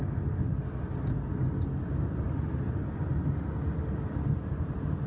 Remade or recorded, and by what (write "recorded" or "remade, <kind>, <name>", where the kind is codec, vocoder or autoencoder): recorded